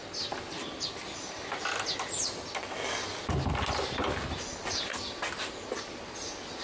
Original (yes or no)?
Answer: yes